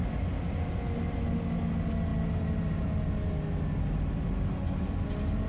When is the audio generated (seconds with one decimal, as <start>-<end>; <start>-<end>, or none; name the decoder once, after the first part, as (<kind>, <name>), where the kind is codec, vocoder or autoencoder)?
none

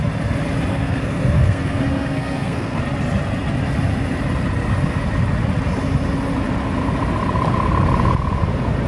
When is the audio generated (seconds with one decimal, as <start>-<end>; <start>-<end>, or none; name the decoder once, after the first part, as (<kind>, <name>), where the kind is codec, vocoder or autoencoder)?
0.7-2.8 (codec, SNAC)

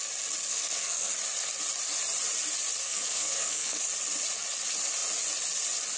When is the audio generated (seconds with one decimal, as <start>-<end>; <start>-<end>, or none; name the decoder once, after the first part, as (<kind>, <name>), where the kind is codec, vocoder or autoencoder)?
0.5-1.1 (codec, SNAC); 2.8-3.8

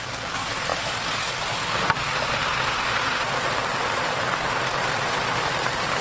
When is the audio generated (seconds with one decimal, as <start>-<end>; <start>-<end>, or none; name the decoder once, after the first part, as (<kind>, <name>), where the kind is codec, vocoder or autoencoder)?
none

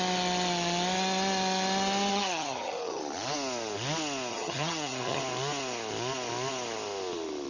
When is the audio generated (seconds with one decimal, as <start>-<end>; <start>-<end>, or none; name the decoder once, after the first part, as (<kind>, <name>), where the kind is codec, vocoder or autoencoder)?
2.1-3.0 (vocoder, HiFi-GAN); 4.3-5.2

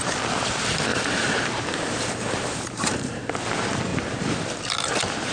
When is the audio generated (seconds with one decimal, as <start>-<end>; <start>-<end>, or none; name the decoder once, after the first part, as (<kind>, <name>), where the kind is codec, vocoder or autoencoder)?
0.9-3.3 (vocoder, BigVGAN v2); 3.9-4.4